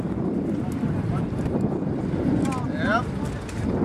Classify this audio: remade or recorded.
recorded